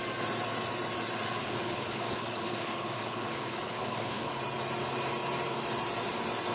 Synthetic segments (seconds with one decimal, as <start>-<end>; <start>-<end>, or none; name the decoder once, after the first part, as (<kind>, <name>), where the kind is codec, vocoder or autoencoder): 1.4-4.4 (codec, HILCodec)